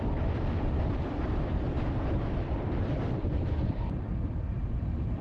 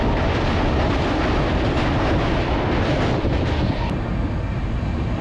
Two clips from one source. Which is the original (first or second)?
second